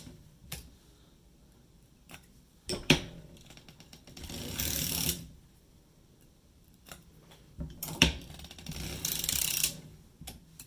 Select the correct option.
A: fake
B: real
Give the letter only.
A